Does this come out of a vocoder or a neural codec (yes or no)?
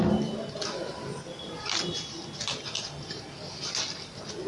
no